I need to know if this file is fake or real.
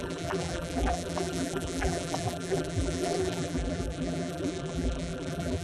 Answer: fake